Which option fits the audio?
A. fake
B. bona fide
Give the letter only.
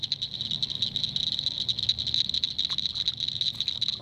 B